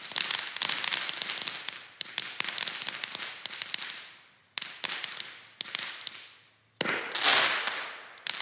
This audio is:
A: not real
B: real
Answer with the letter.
B